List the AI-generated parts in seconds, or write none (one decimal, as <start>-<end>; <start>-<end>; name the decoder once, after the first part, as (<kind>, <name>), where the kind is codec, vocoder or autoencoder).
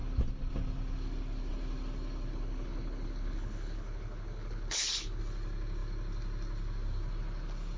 2.3-5.2 (codec, HILCodec)